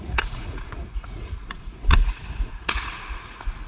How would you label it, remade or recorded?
remade